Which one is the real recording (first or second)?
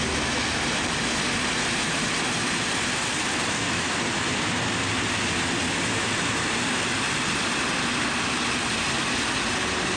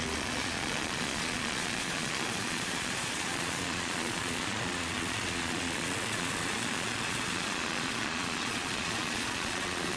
first